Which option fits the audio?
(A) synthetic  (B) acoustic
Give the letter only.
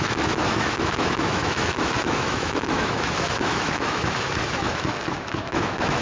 A